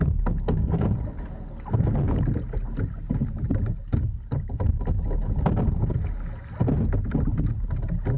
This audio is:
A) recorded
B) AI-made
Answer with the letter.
A